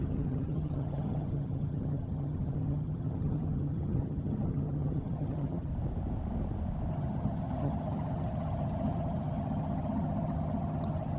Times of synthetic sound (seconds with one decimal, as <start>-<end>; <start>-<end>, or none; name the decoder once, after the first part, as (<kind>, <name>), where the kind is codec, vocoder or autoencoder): 0.0-5.7 (vocoder, HiFi-GAN); 6.9-11.2